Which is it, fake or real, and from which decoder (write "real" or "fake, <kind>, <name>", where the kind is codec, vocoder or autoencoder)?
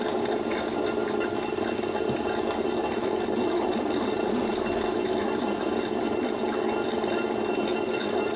real